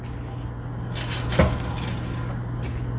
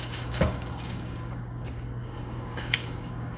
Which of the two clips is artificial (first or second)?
second